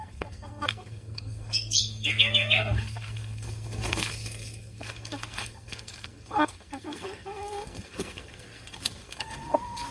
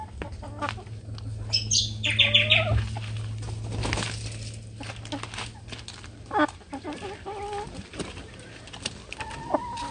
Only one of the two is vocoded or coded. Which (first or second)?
first